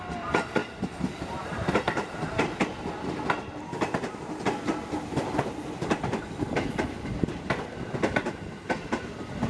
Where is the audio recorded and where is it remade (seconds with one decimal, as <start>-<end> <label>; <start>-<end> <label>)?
0.0-0.6 recorded; 0.6-1.7 remade; 1.7-9.5 recorded

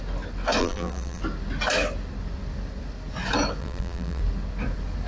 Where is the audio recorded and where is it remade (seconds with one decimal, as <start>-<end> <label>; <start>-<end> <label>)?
0.0-0.6 recorded; 0.6-1.2 remade; 1.2-3.6 recorded; 3.6-4.2 remade; 4.2-5.1 recorded